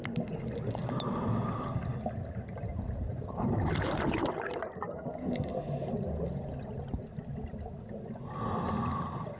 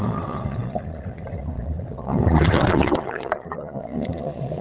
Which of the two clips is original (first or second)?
first